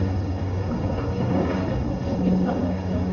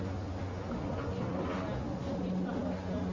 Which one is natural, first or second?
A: second